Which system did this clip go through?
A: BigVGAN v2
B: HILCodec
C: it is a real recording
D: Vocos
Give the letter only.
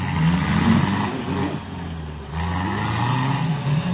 C